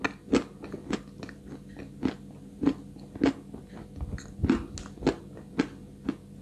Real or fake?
real